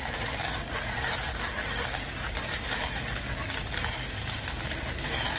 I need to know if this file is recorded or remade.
recorded